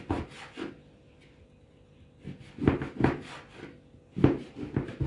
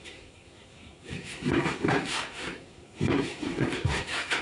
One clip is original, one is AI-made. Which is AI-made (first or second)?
second